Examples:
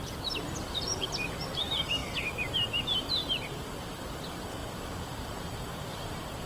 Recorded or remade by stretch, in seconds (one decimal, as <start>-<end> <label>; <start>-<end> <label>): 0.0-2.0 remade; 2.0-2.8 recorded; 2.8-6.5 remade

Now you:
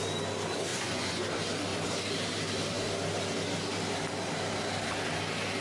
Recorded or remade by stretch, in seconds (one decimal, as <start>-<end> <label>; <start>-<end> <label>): 0.0-0.7 recorded; 0.7-1.2 remade; 1.2-5.6 recorded

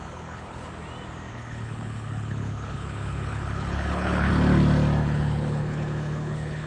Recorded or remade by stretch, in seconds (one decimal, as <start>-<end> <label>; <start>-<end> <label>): 0.0-0.7 remade; 0.7-1.3 recorded; 1.3-4.3 remade; 4.3-5.0 recorded; 5.0-6.7 remade

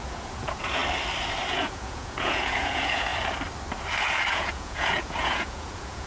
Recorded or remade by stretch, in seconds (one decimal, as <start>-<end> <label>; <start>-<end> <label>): 0.0-0.8 remade; 0.8-1.5 recorded; 1.5-3.1 remade; 3.1-4.3 recorded; 4.3-6.1 remade

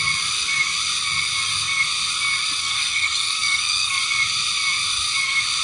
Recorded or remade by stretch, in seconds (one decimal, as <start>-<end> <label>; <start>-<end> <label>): 0.0-2.6 recorded; 2.6-4.0 remade; 4.0-5.6 recorded

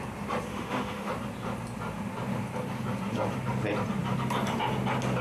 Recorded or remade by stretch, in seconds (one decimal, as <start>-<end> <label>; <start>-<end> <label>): 0.0-0.5 recorded; 0.5-1.1 remade; 1.1-5.2 recorded